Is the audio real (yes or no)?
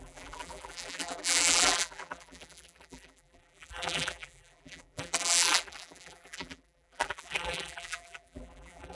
no